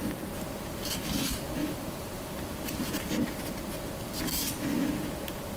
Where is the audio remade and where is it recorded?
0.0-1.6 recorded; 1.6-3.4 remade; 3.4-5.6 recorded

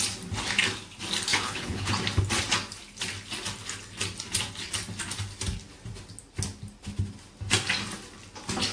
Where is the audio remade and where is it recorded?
0.0-1.3 recorded; 1.3-1.9 remade; 1.9-8.7 recorded

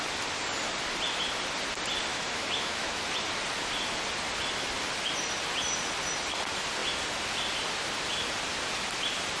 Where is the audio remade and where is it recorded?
0.0-2.1 recorded; 2.1-3.0 remade; 3.0-9.4 recorded

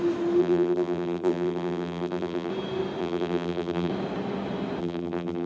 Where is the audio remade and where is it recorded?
0.0-0.4 recorded; 0.4-2.5 remade; 2.5-3.0 recorded; 3.0-3.9 remade; 3.9-4.8 recorded; 4.8-5.5 remade

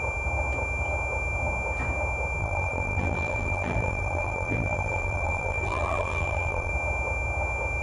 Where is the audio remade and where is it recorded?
0.0-2.4 recorded; 2.4-6.7 remade; 6.7-7.8 recorded

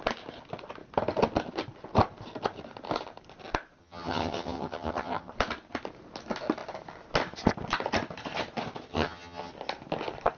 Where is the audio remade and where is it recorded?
0.0-3.8 recorded; 3.8-5.3 remade; 5.3-8.9 recorded; 8.9-9.5 remade; 9.5-10.4 recorded

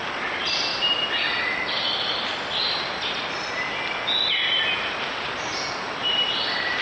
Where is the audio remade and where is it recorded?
0.0-0.7 remade; 0.7-1.4 recorded; 1.4-6.8 remade

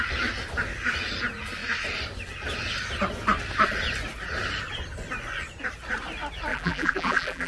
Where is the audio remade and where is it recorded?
0.0-6.5 recorded; 6.5-7.5 remade